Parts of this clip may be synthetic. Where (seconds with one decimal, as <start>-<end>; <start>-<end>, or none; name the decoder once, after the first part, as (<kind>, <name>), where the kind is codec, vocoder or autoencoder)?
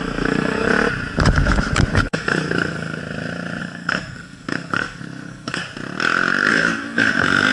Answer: 0.0-0.7 (codec, SNAC); 1.9-3.0; 3.6-5.6; 6.5-7.5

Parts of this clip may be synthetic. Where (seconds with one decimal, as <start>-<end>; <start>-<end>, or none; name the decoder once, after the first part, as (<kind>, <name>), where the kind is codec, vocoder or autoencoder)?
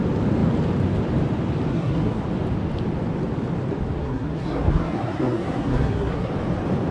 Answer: 1.7-2.2 (codec, SNAC); 4.0-6.3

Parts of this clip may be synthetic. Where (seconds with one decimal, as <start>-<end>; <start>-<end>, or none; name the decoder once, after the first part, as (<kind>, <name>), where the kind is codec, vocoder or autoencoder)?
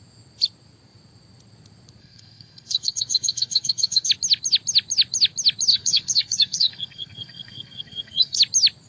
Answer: 2.0-4.1 (codec, SNAC); 5.7-8.4